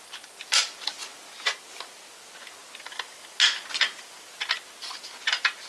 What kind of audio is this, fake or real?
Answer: real